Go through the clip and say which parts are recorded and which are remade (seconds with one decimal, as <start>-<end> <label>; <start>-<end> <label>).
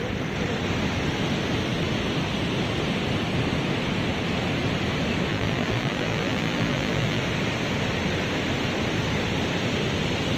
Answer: 0.0-5.3 recorded; 5.3-7.2 remade; 7.2-10.4 recorded